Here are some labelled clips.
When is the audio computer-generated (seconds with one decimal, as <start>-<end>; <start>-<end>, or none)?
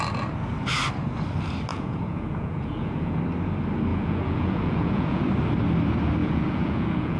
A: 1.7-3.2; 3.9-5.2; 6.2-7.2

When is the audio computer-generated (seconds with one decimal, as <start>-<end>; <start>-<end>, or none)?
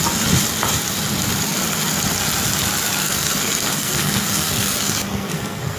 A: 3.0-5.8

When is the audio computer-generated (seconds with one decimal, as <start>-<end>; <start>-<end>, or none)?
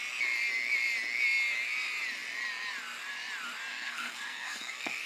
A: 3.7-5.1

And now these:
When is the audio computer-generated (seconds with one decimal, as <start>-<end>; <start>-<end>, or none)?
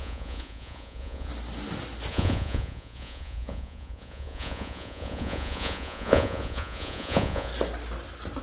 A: 0.0-1.3; 2.1-7.5